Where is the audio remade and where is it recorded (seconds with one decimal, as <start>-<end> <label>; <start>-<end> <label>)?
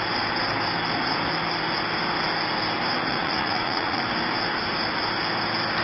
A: 0.0-3.1 recorded; 3.1-4.0 remade; 4.0-5.8 recorded